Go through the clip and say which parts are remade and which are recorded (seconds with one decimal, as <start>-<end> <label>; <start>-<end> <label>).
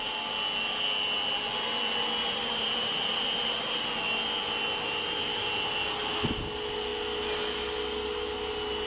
0.0-2.2 recorded; 2.2-3.8 remade; 3.8-8.9 recorded